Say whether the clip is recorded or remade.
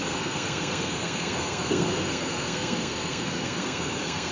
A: remade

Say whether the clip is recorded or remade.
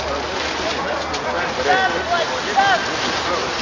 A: recorded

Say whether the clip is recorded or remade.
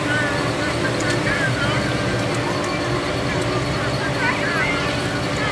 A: recorded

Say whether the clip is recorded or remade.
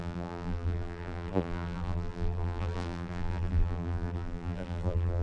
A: remade